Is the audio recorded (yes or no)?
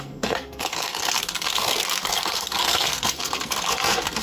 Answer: no